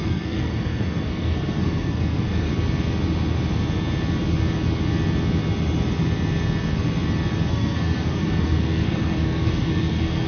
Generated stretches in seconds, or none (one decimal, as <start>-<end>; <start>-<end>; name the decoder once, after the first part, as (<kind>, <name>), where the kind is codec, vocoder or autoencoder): 0.0-2.5 (codec, SNAC); 7.5-10.3